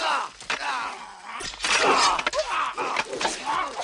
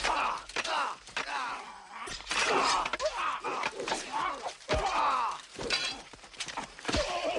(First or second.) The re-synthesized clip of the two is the second